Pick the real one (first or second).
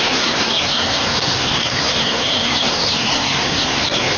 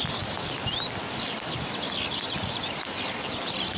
second